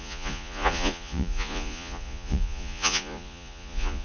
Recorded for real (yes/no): no